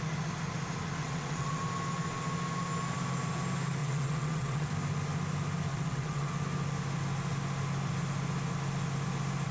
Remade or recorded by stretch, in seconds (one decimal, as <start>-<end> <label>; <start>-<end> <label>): 0.0-1.0 recorded; 1.0-1.6 remade; 1.6-3.8 recorded; 3.8-4.7 remade; 4.7-5.7 recorded; 5.7-6.3 remade; 6.3-9.5 recorded